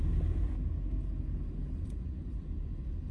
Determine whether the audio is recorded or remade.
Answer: recorded